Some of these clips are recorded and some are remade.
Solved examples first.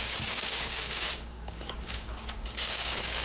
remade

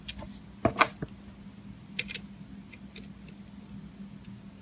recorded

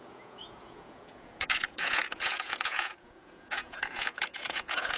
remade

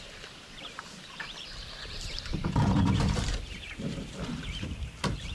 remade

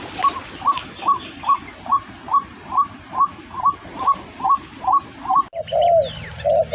recorded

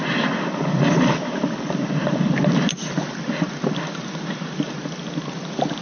recorded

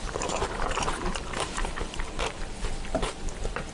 remade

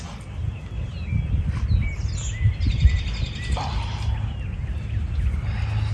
recorded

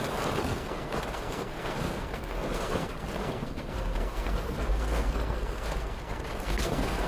remade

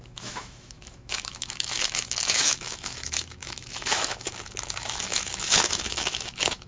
remade